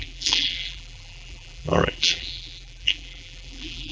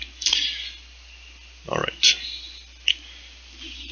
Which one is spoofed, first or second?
first